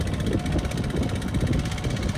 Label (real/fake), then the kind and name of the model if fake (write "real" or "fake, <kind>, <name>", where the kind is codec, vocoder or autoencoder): real